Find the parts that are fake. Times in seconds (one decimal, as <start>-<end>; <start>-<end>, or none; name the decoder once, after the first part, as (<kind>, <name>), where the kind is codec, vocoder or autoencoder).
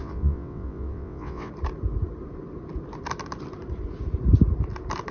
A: 0.0-1.5 (vocoder, WaveNeXt)